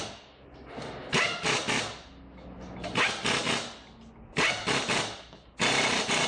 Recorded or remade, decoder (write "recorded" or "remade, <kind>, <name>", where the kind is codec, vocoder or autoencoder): recorded